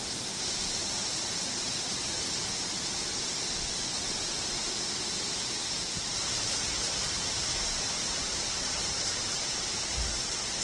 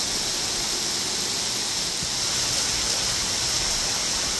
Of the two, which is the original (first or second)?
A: second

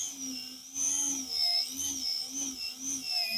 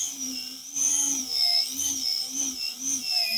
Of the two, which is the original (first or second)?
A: first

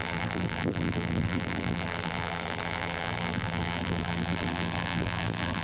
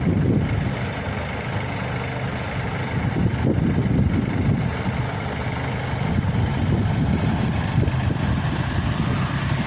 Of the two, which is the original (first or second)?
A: second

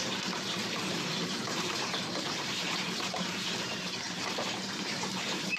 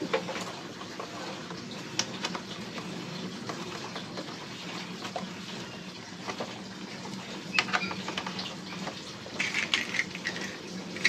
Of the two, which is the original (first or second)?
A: second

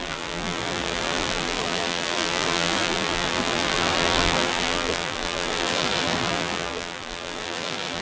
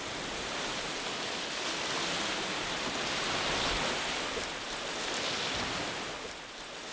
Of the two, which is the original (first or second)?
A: second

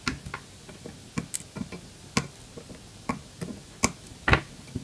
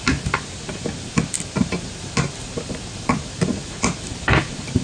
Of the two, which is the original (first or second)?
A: first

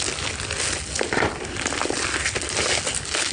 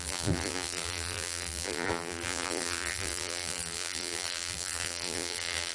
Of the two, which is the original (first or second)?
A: first